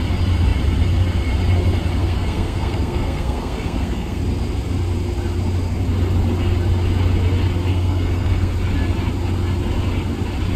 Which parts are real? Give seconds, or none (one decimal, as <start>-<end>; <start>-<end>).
0.0-2.0; 4.2-7.7; 8.5-10.6